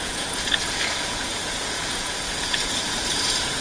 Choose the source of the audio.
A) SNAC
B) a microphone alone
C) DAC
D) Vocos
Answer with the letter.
D